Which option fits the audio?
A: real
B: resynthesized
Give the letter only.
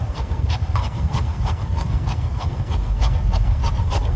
B